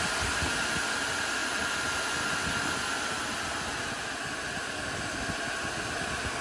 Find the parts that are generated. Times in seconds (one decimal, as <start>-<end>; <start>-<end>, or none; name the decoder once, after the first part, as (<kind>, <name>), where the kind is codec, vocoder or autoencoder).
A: none